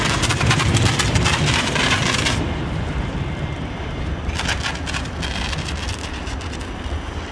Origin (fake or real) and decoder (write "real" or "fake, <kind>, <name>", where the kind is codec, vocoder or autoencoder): fake, vocoder, BigVGAN v2